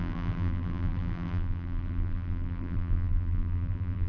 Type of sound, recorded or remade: remade